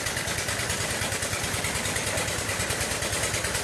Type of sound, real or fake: real